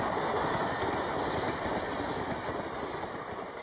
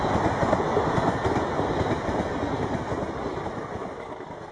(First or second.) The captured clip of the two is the second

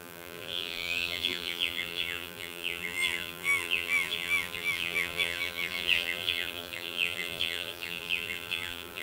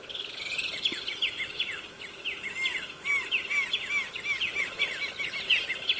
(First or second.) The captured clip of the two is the second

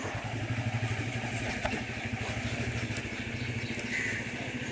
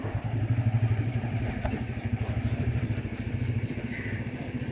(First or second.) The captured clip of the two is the first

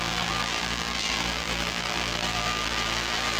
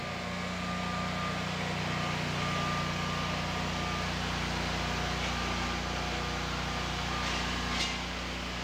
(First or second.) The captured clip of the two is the second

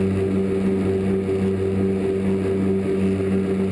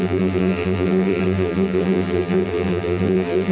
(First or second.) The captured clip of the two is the first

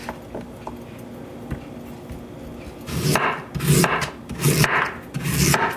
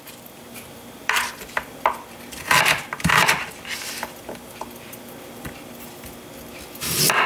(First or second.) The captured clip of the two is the first